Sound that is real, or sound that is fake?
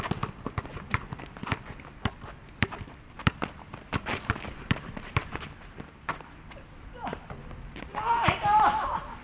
fake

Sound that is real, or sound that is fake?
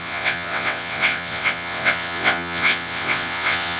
fake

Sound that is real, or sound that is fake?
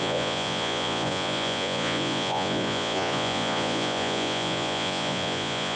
fake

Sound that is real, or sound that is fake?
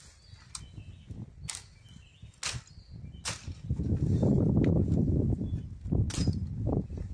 real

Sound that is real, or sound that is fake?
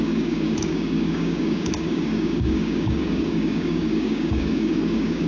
fake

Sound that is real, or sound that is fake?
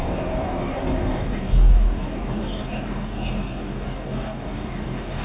fake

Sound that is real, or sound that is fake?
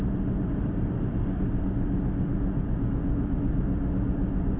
real